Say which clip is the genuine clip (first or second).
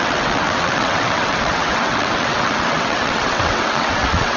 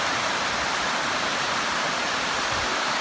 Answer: second